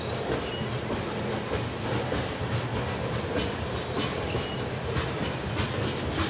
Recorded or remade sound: recorded